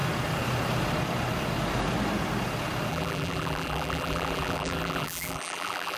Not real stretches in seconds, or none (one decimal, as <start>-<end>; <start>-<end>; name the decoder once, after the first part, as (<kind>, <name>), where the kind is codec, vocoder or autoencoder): 2.9-6.0 (vocoder, BigVGAN v2)